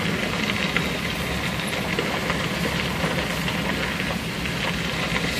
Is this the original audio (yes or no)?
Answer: yes